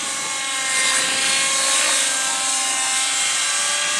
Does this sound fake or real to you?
real